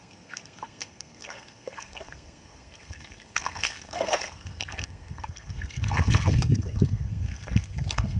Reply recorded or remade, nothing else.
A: remade